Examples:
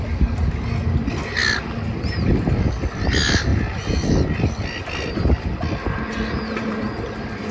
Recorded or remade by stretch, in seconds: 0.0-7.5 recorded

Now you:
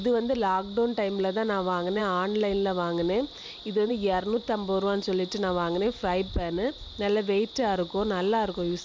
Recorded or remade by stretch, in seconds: 0.0-8.8 recorded

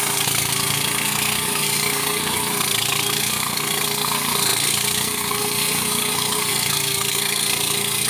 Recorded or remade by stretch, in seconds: 0.0-8.1 remade

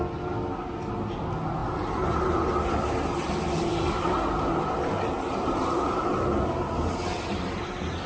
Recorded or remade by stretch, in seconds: 0.0-8.1 recorded